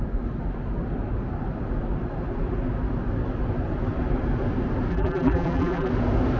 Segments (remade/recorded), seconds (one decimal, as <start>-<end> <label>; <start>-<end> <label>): 0.0-4.9 recorded; 4.9-5.9 remade; 5.9-6.4 recorded